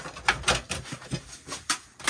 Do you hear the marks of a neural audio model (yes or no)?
no